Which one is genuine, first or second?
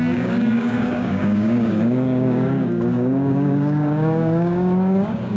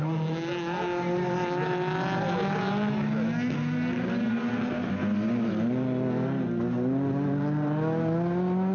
second